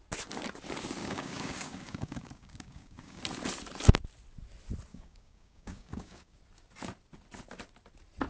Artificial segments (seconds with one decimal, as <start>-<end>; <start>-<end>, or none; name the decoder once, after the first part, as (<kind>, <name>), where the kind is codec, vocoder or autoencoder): 1.0-3.2 (codec, DAC); 4.9-6.4